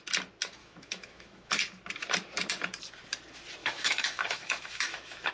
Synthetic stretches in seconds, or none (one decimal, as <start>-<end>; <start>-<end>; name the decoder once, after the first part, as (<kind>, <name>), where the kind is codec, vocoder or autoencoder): 0.6-1.5 (autoencoder, DAC-VAE); 3.6-5.3